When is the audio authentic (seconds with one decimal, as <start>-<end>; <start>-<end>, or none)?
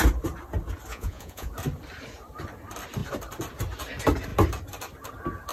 0.0-0.9; 1.5-5.5